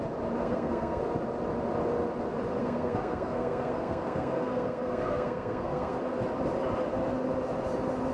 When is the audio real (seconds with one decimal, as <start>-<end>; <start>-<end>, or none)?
0.0-0.4; 1.0-2.6; 6.0-8.1